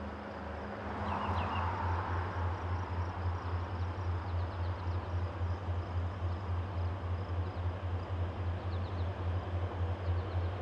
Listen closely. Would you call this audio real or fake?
real